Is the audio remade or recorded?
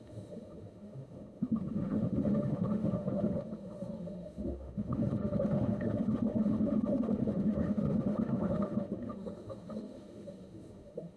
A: remade